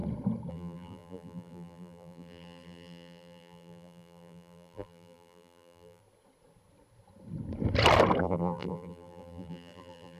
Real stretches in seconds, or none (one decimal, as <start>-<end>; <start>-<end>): 0.0-0.5; 6.0-8.2